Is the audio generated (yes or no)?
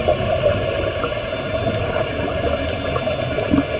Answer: no